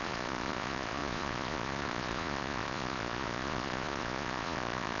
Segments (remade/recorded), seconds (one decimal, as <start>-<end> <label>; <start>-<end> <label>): 0.0-5.0 remade